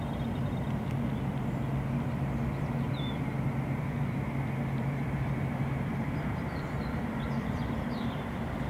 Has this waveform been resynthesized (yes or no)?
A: yes